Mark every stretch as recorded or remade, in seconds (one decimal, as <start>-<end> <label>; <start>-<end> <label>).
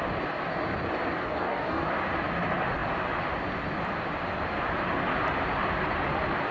0.0-1.2 recorded; 1.2-1.9 remade; 1.9-6.5 recorded